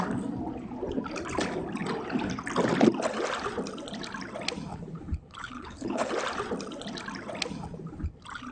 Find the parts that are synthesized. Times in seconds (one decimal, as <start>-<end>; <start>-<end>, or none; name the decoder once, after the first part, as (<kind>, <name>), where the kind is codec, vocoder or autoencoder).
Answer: 4.7-6.1 (codec, HILCodec)